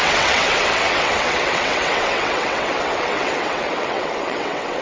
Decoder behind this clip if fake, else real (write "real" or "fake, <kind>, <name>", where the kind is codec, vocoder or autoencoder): fake, vocoder, WaveNeXt